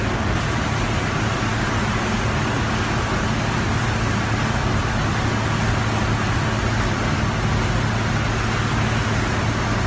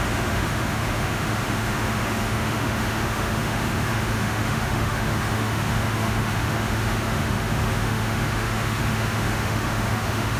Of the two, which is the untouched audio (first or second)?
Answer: first